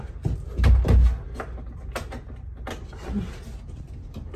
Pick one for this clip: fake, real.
real